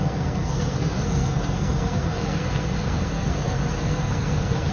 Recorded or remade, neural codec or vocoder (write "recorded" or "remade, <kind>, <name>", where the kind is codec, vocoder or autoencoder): remade, codec, SNAC